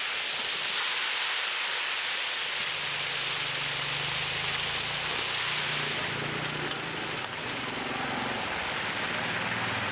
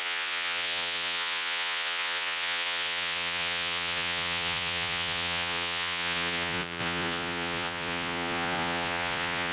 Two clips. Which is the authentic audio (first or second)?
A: first